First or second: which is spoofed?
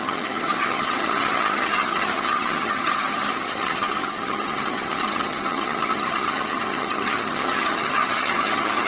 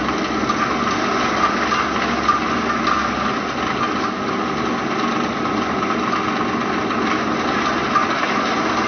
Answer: first